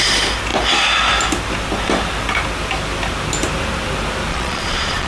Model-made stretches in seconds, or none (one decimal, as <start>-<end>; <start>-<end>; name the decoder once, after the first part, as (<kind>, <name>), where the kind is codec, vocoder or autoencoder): 4.3-5.1 (vocoder, Vocos)